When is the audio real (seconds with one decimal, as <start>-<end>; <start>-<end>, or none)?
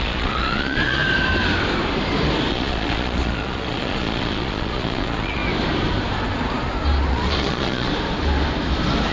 1.0-2.5; 5.4-7.1; 7.9-9.1